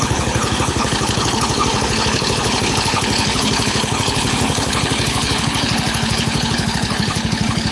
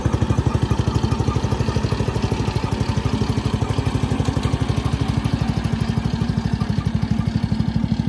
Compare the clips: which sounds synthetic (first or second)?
first